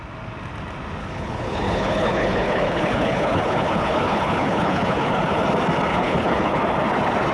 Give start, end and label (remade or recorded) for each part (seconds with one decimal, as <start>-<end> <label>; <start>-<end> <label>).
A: 0.0-1.0 recorded; 1.0-5.4 remade; 5.4-5.9 recorded; 5.9-6.6 remade; 6.6-7.3 recorded